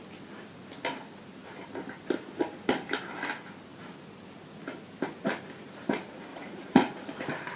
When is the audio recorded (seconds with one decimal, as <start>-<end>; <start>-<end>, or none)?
0.0-6.3; 6.9-7.6